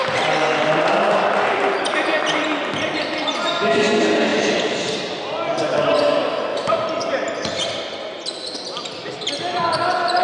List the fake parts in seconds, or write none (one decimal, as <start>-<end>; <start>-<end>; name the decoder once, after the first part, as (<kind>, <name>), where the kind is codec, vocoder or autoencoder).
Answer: 4.3-5.0 (vocoder, BigVGAN v2); 6.5-7.8